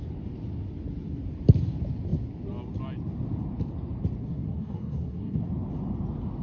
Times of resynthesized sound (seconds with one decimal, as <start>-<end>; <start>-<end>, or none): 4.2-5.4